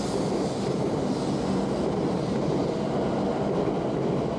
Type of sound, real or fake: real